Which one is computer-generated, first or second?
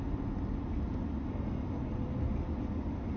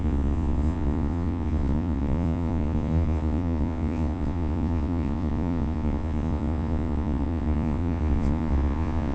second